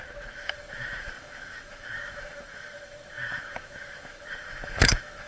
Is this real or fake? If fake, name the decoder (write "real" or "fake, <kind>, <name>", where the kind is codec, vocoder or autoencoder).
fake, autoencoder, DAC-VAE